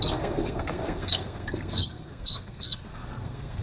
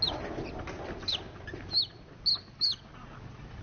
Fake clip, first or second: first